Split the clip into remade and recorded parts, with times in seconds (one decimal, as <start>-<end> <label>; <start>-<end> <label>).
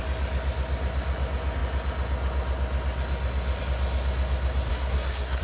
0.0-4.7 recorded; 4.7-5.4 remade